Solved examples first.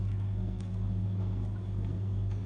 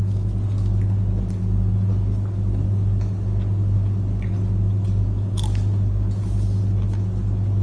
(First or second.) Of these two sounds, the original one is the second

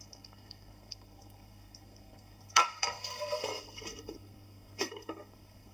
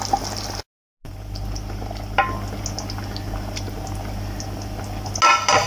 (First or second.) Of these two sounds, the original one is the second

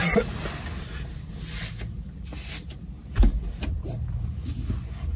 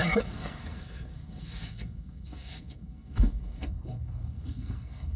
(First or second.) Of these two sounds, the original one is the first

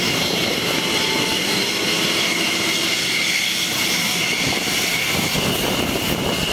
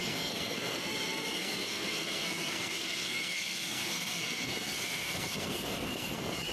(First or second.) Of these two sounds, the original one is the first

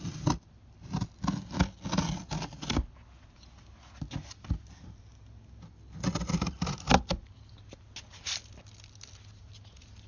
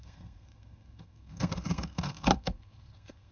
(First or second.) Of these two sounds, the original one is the first